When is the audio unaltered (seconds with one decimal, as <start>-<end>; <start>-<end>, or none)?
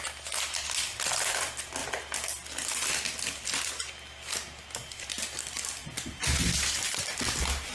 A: 0.0-7.7